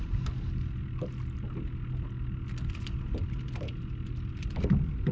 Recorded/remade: recorded